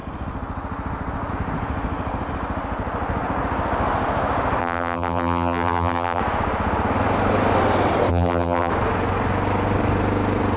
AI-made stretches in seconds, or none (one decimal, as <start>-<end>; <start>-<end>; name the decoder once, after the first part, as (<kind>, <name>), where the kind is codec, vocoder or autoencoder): 4.6-6.2 (vocoder, BigVGAN v2); 8.1-8.7